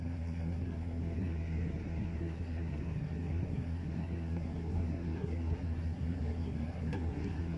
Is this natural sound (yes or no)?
no